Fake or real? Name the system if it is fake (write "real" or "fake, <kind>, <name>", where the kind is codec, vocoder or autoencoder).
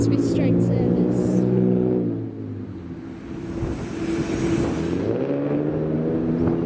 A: real